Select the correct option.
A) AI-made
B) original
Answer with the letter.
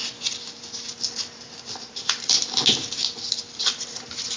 B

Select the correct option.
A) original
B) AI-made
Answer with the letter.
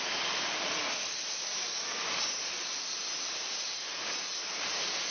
B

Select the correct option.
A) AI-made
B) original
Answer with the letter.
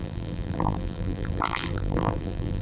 A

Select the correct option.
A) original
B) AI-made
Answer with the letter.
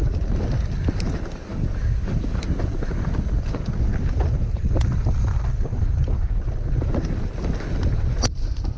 A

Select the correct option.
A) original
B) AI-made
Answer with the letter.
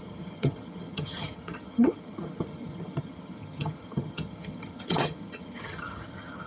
B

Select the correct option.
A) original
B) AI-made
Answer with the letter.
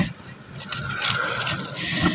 A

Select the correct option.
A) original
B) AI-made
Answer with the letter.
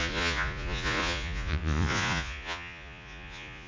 B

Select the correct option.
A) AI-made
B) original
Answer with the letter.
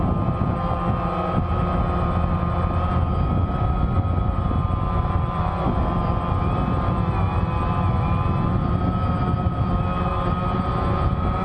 B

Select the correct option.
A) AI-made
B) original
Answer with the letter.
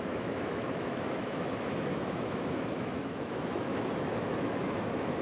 A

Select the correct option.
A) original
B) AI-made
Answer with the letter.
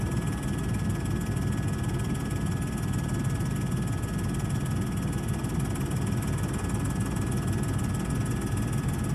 A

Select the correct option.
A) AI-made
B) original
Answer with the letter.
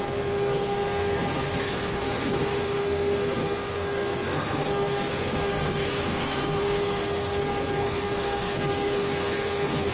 A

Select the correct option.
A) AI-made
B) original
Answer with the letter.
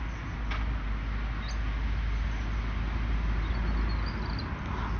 B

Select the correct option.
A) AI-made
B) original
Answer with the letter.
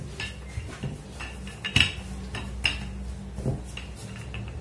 B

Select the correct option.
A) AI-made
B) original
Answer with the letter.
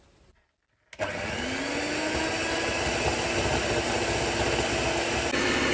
B